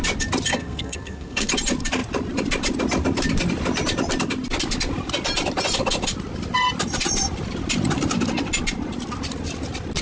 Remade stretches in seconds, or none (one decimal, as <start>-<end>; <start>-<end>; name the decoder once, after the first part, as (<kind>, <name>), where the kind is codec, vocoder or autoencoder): 0.5-1.5 (codec, SNAC)